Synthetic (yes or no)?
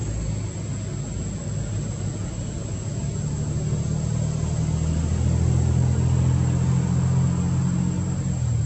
no